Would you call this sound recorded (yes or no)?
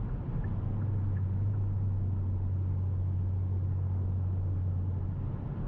yes